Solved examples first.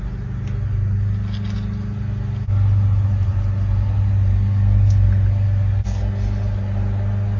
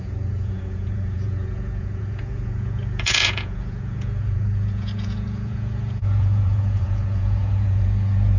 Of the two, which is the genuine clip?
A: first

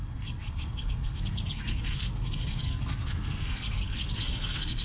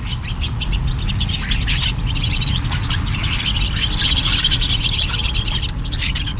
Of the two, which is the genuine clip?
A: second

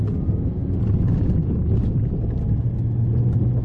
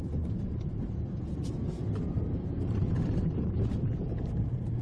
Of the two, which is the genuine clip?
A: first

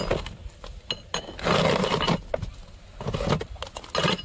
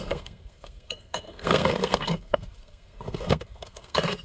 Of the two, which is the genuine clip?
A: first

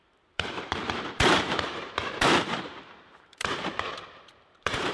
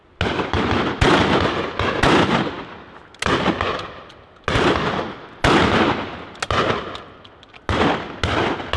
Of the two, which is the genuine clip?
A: second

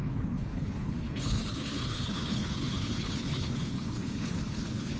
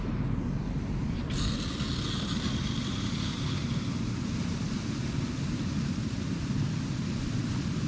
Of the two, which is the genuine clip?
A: second